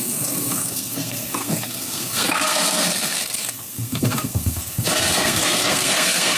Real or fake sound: fake